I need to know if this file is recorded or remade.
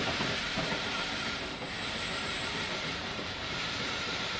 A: remade